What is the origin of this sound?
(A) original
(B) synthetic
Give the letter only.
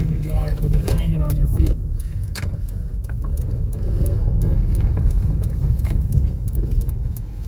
B